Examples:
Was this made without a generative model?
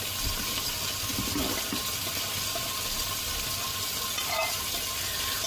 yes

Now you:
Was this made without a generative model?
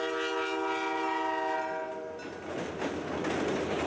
yes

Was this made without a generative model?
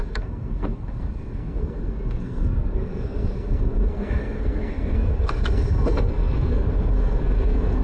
no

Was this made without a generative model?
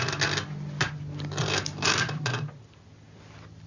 yes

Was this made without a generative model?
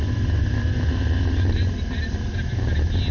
yes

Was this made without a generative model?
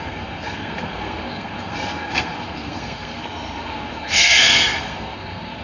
no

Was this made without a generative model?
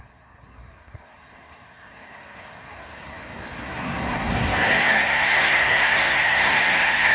no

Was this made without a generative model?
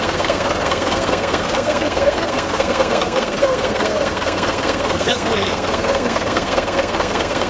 no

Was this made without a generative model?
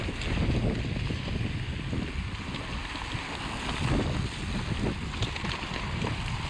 yes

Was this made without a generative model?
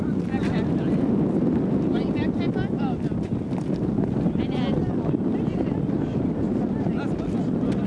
yes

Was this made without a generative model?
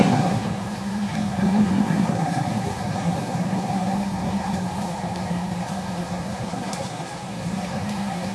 no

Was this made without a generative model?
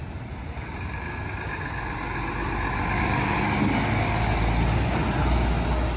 yes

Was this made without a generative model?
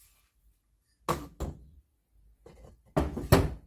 yes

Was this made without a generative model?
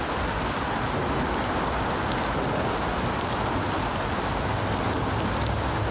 yes